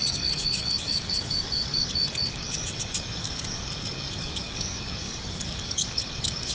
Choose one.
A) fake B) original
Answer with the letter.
A